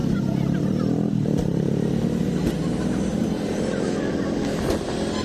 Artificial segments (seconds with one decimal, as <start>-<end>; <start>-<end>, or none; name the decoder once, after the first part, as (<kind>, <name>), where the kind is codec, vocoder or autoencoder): 0.0-2.2 (vocoder, BigVGAN v2); 3.2-4.7